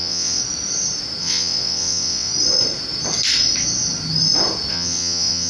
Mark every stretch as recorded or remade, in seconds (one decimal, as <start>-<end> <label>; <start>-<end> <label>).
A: 0.0-0.4 remade; 0.4-1.2 recorded; 1.2-2.3 remade; 2.3-4.7 recorded; 4.7-5.5 remade